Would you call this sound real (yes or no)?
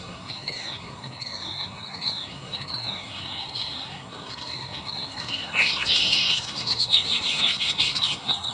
no